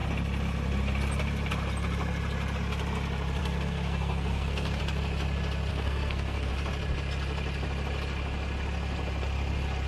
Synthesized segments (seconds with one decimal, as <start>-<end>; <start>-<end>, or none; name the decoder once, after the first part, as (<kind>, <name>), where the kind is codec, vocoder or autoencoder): 3.4-4.8 (codec, SNAC); 5.7-6.5